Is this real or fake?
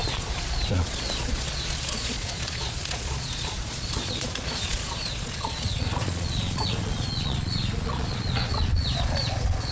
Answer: fake